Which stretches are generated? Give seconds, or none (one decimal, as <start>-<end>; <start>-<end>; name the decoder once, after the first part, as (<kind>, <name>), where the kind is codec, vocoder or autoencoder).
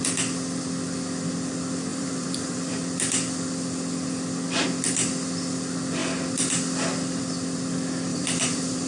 1.9-2.8 (vocoder, BigVGAN v2); 8.1-8.9